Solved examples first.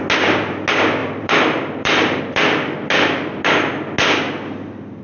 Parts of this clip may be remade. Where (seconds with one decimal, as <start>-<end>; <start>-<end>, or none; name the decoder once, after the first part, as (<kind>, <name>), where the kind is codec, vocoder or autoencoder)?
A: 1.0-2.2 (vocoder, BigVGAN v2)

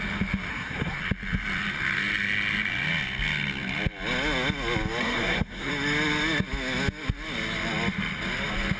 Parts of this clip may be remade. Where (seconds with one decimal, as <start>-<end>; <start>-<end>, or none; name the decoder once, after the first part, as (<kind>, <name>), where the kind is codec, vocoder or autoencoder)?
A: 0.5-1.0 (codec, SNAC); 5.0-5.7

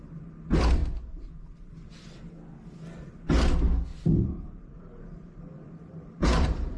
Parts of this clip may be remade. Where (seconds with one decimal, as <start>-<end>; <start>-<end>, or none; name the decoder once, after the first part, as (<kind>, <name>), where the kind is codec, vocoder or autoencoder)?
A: 3.9-6.8 (vocoder, BigVGAN v2)